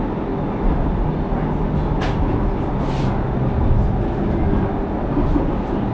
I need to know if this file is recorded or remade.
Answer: recorded